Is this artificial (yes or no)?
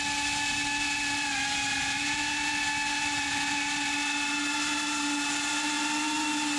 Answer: no